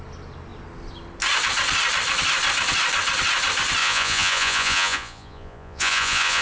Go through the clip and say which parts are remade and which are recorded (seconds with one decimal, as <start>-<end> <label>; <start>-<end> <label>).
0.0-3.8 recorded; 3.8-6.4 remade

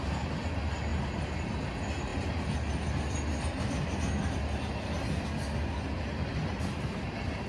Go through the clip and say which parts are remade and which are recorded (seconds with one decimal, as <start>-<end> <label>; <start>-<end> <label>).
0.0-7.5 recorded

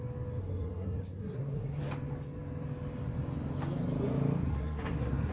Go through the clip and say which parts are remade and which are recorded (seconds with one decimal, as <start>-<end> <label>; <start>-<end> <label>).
0.0-0.4 recorded; 0.4-1.8 remade; 1.8-4.5 recorded; 4.5-5.3 remade

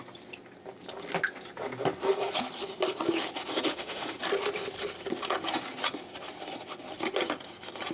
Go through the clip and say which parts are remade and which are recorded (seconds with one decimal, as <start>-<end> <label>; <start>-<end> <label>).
0.0-3.7 recorded; 3.7-4.2 remade; 4.2-7.9 recorded

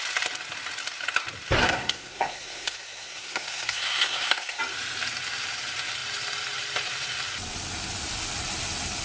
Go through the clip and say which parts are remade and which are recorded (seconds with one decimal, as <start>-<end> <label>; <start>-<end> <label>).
0.0-1.6 recorded; 1.6-4.6 remade; 4.6-9.0 recorded

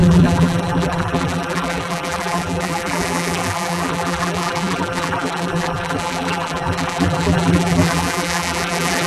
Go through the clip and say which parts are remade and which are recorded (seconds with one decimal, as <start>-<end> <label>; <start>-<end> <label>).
0.0-9.1 remade

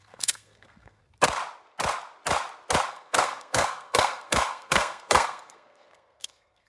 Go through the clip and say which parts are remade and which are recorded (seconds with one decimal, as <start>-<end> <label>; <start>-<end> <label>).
0.0-1.0 remade; 1.0-2.9 recorded; 2.9-6.7 remade